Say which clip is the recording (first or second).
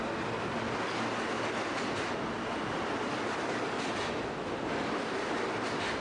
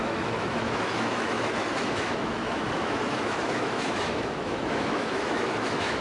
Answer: first